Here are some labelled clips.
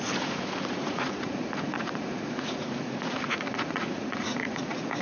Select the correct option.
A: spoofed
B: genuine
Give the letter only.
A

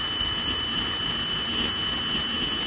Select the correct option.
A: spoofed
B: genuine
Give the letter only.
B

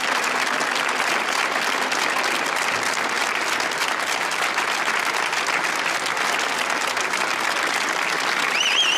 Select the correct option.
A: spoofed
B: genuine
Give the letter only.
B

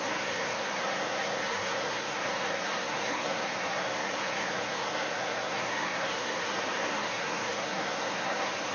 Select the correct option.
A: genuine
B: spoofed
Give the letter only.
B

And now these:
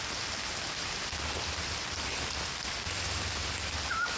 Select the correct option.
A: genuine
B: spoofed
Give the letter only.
A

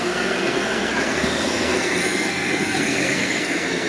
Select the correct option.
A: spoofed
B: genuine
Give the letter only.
A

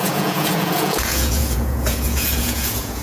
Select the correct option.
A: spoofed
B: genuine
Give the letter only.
A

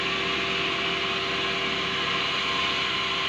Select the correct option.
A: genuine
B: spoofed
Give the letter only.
A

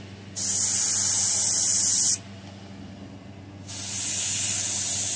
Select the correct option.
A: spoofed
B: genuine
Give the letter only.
B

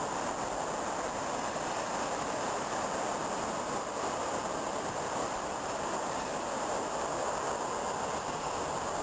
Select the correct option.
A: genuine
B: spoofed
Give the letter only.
A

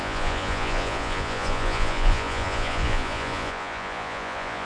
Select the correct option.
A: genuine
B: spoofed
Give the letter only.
B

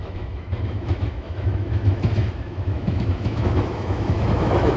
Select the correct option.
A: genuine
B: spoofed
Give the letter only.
B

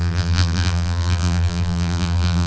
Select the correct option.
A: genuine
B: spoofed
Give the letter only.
B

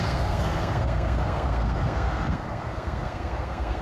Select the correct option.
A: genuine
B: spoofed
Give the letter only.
B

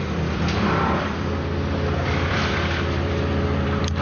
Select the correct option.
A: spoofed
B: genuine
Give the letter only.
A